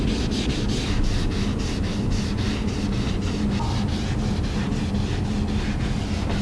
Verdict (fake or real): real